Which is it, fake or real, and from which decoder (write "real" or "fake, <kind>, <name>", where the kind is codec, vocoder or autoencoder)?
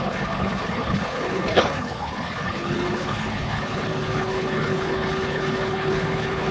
fake, codec, HILCodec